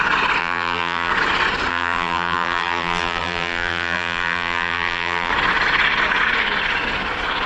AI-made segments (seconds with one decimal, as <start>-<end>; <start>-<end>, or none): 0.4-1.1; 1.7-5.3

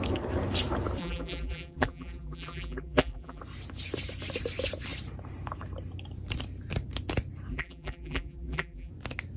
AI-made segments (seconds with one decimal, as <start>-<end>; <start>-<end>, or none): 1.0-3.4; 7.5-8.9

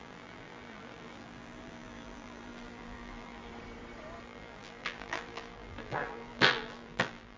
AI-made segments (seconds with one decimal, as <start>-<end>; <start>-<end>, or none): 0.0-3.5; 4.2-7.4

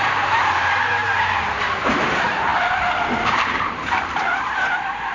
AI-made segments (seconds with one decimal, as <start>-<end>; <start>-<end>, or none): 0.0-2.5; 3.3-5.1

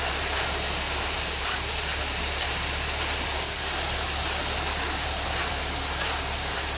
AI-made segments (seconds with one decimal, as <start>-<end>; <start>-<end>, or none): 0.0-6.8

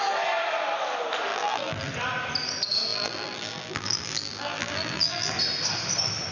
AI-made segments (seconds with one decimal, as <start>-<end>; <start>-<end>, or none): 1.3-1.9; 2.9-5.3

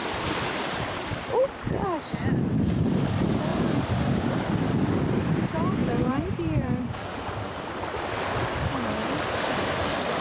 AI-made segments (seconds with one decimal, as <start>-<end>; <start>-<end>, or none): 0.0-3.1; 3.5-4.4; 5.2-7.6